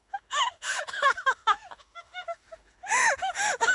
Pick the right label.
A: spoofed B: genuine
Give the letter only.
A